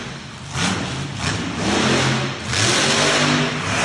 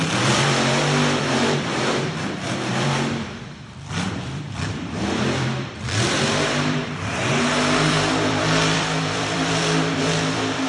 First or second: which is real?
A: first